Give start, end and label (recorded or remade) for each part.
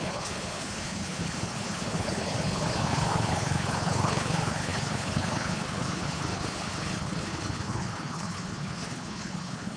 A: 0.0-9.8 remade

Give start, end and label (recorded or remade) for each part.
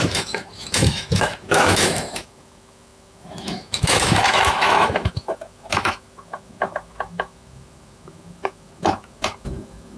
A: 0.0-10.0 remade